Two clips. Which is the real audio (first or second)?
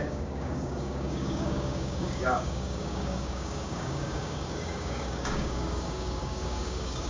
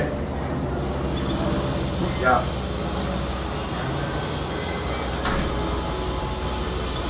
second